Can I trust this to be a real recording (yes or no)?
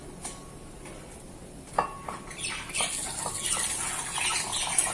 yes